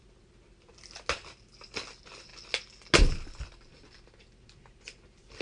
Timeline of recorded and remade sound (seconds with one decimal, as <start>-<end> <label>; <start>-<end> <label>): 0.0-5.4 recorded